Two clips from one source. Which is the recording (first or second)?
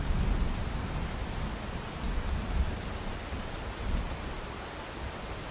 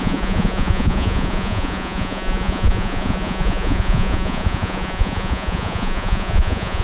first